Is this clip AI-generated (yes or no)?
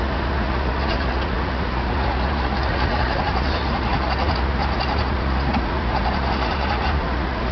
yes